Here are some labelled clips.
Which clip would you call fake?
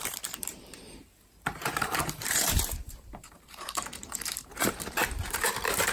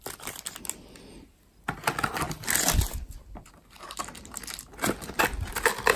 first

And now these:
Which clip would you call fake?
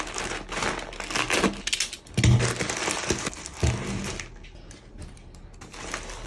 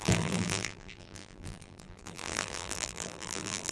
second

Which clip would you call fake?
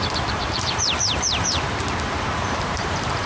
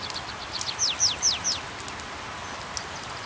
first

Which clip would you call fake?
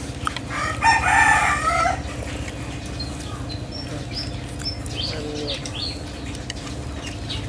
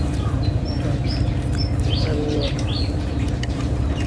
second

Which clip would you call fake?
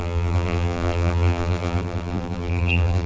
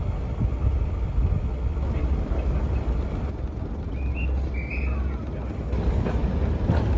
first